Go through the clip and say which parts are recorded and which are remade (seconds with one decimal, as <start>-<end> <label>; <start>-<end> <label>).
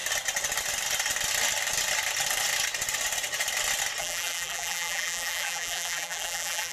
0.0-4.0 recorded; 4.0-6.7 remade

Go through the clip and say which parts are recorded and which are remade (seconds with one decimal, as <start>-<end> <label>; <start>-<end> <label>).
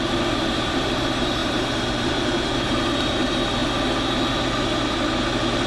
0.0-3.6 remade; 3.6-5.7 recorded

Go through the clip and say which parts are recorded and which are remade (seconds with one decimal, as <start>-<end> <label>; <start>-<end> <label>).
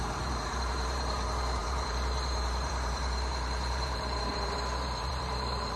0.0-5.8 remade